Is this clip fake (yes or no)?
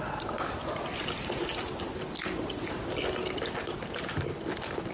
no